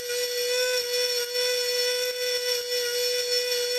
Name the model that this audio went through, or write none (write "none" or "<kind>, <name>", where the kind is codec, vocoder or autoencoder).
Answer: none